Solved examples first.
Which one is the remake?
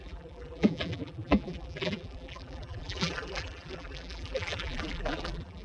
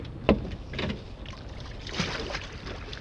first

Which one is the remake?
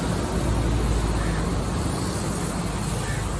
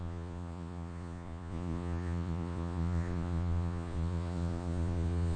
second